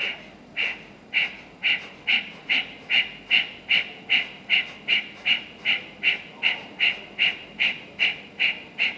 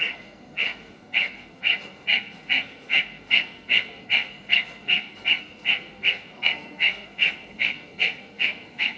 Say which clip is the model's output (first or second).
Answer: second